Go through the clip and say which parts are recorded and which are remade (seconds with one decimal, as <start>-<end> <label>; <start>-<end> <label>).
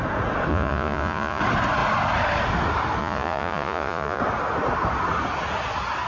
0.0-0.5 recorded; 0.5-1.4 remade; 1.4-3.0 recorded; 3.0-4.2 remade; 4.2-6.1 recorded